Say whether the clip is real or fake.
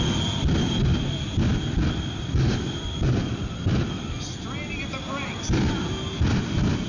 real